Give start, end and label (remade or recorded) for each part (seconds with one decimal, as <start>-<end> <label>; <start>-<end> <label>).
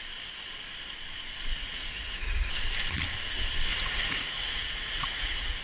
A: 0.0-1.5 recorded; 1.5-2.5 remade; 2.5-3.7 recorded; 3.7-5.6 remade